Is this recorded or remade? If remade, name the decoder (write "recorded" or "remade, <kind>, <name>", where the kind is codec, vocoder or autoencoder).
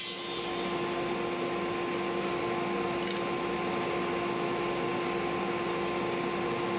recorded